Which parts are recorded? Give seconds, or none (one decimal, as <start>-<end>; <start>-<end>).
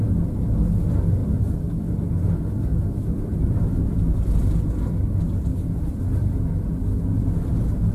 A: 0.0-2.7; 6.0-7.9